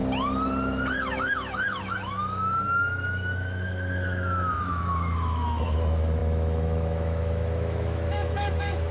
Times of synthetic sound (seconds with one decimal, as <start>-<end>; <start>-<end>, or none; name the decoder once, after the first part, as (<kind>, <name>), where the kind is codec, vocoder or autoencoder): 0.9-8.9 (autoencoder, DAC-VAE)